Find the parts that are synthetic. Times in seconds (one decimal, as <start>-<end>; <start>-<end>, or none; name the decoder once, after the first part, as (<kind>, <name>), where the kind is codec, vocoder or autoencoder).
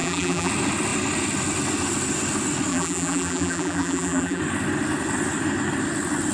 0.0-0.5 (vocoder, BigVGAN v2); 2.7-4.4